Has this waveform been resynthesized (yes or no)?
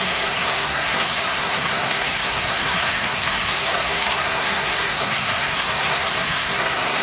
yes